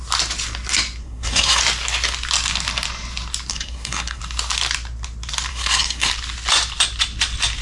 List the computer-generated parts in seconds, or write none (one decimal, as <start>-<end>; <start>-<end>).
1.0-1.6; 3.5-4.2; 5.5-6.1